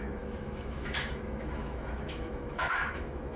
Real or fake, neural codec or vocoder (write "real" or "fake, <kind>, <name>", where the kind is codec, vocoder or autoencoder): fake, autoencoder, DAC-VAE